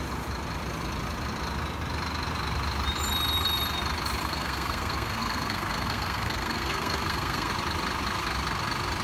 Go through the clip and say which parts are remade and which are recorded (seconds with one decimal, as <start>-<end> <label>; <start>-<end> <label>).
0.0-4.2 recorded; 4.2-7.5 remade; 7.5-9.0 recorded